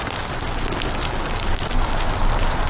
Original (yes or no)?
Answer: yes